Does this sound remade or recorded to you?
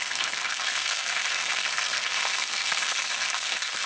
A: remade